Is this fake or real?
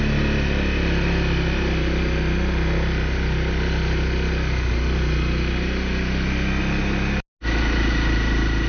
real